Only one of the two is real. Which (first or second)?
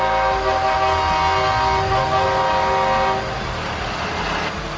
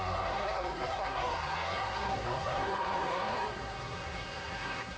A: first